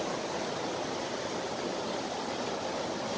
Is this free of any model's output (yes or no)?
yes